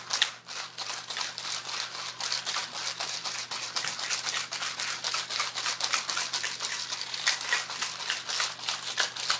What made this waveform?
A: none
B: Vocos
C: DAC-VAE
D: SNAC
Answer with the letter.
A